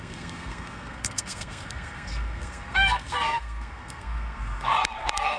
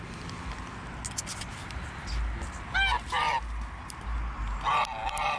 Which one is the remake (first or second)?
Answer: first